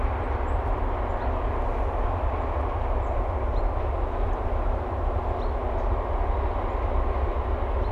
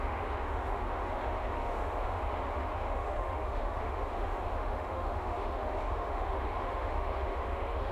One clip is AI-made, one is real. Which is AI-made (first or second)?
second